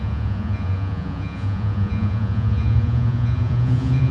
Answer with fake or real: fake